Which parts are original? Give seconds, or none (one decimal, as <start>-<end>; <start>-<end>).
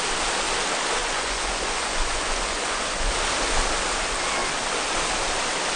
0.0-1.0; 3.1-5.8